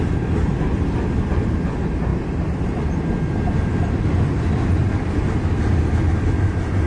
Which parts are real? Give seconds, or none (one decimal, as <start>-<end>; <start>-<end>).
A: 0.0-6.9